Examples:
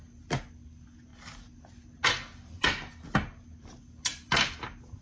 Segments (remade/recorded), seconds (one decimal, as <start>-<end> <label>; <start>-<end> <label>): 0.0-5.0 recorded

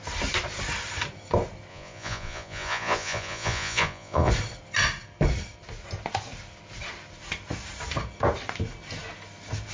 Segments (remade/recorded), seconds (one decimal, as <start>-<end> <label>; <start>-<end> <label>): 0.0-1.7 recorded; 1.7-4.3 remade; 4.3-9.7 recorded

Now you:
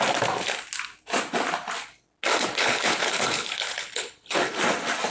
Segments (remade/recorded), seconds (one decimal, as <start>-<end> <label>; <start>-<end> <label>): 0.0-2.3 recorded; 2.3-4.6 remade; 4.6-5.1 recorded